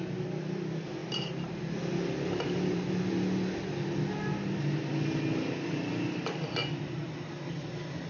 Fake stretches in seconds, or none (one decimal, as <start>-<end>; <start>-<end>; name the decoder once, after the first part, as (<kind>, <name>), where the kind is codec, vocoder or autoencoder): none